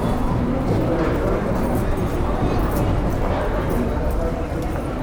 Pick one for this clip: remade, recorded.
remade